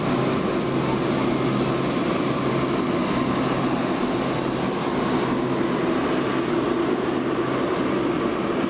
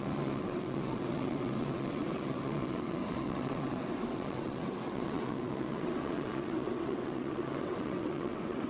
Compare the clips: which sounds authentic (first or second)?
first